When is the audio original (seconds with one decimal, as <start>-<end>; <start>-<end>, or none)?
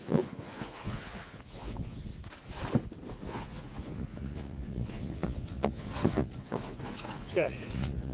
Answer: 2.1-3.1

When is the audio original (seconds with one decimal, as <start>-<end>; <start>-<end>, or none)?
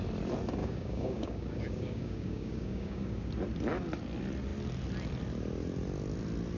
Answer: 0.0-0.6; 3.3-6.6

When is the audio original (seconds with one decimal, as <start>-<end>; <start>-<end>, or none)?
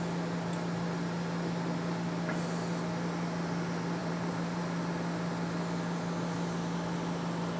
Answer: 0.0-4.0; 4.8-7.6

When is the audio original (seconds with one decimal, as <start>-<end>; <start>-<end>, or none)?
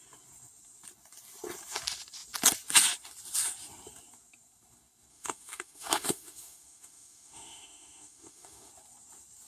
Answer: 0.0-5.1; 8.7-9.5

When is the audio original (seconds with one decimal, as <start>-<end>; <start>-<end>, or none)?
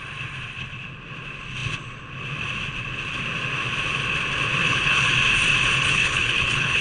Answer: 0.0-4.6; 5.1-5.9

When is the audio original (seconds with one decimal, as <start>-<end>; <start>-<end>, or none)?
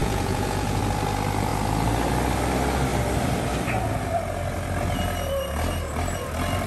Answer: 0.8-6.7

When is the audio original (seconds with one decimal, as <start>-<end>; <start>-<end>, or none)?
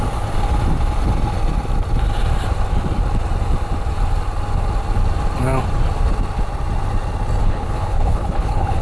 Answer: 0.0-7.4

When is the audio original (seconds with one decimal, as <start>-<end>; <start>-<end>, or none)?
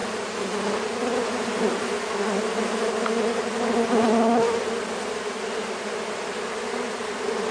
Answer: 0.0-7.5